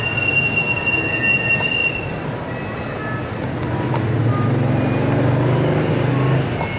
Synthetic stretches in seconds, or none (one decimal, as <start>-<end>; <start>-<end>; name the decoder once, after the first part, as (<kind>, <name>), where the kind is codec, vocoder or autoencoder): none